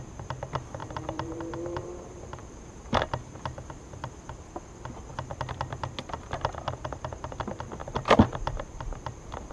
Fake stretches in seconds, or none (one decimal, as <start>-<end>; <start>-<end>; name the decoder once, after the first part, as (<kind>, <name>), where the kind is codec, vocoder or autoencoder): 0.8-4.1 (vocoder, BigVGAN v2); 7.8-9.5